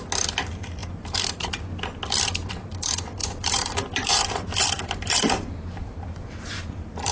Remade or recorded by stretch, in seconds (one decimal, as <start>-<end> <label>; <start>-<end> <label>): 0.0-0.8 recorded; 0.8-2.0 remade; 2.0-3.2 recorded; 3.2-6.0 remade; 6.0-7.1 recorded